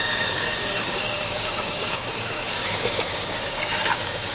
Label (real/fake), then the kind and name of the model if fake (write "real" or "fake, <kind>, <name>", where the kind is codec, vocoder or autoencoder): fake, codec, DAC